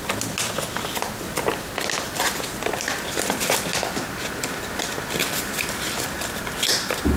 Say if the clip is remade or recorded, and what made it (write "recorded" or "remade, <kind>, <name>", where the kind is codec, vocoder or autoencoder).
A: recorded